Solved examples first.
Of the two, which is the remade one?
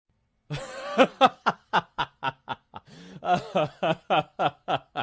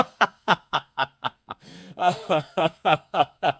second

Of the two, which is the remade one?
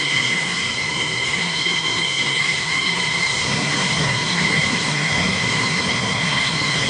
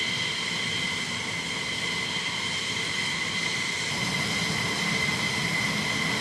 first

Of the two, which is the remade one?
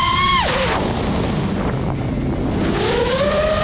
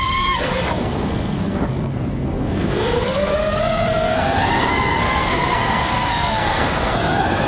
second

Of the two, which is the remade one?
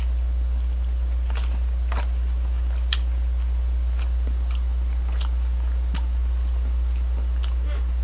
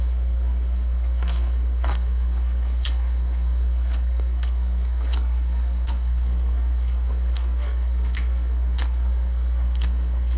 second